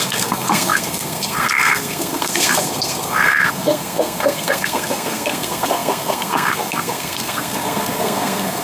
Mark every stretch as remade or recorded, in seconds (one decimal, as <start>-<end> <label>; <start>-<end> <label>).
0.0-8.6 remade